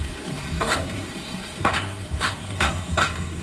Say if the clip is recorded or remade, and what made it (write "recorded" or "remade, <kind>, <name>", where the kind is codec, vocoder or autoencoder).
remade, codec, SNAC